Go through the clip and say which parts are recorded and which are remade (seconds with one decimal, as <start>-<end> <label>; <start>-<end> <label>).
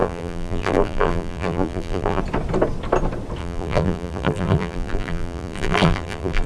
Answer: 0.0-2.2 remade; 2.2-3.4 recorded; 3.4-6.5 remade